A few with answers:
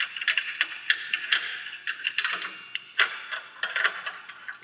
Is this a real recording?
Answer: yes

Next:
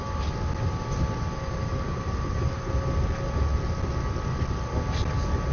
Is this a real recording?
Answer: yes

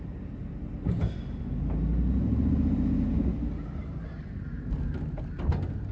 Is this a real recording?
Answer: yes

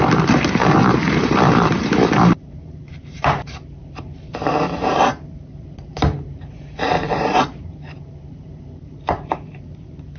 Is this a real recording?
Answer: no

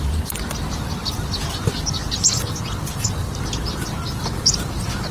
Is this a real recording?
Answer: yes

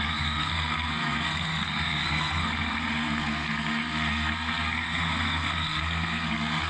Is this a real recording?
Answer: no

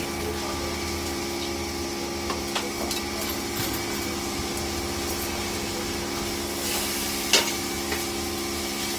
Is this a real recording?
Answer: yes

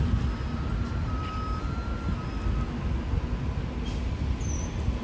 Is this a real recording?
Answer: yes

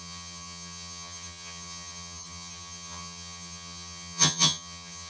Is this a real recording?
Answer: no